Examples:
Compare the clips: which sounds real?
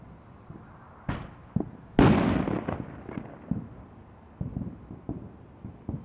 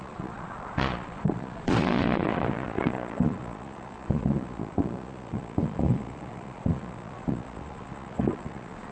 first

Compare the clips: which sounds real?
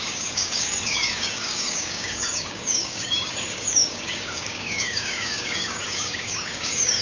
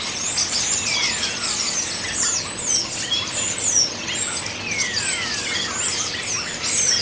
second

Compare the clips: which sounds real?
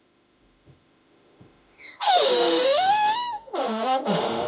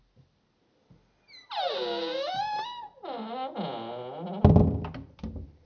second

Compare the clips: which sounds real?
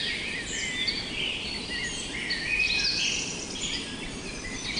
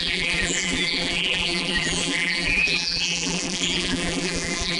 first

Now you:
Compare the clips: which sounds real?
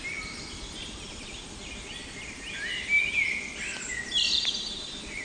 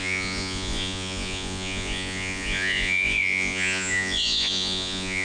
first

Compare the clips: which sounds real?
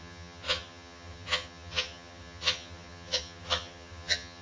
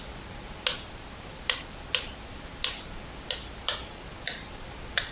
second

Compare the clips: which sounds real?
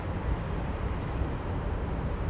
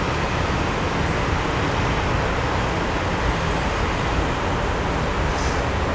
second